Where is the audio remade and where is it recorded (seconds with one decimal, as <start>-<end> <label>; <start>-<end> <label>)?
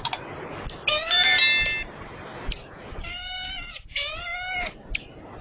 0.0-5.4 recorded